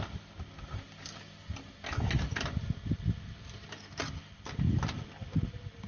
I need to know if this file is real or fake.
real